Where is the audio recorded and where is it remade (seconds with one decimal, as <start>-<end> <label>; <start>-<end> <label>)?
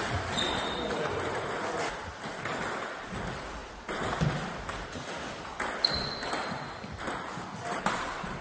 0.0-8.4 recorded